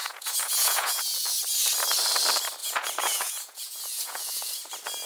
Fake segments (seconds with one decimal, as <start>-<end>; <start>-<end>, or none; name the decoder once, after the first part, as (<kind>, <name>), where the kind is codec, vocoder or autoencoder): 0.0-1.4 (vocoder, Vocos); 2.6-4.6